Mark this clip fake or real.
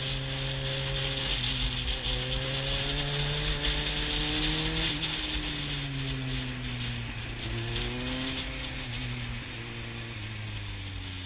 real